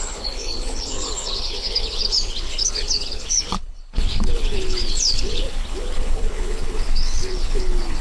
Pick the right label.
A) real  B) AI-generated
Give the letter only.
B